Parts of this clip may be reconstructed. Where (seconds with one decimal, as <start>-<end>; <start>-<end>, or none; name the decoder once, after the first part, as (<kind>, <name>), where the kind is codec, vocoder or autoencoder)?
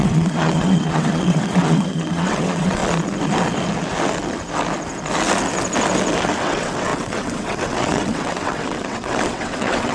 0.0-2.8 (vocoder, WaveNeXt); 6.4-9.9